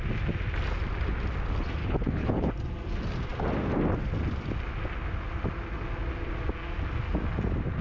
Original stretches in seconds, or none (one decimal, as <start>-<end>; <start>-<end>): 0.0-1.8; 2.5-7.8